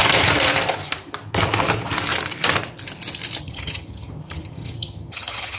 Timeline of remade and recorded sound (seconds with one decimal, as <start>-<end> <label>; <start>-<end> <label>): 0.0-3.4 recorded; 3.4-5.6 remade